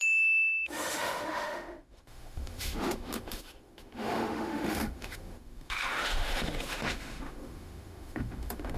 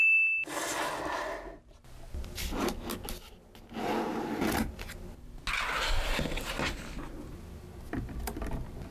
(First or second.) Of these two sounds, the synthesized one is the first